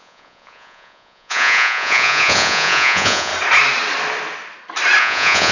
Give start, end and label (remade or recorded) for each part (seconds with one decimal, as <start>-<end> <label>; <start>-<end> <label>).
0.0-3.3 remade; 3.3-5.0 recorded; 5.0-5.5 remade